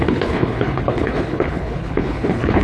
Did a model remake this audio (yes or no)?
yes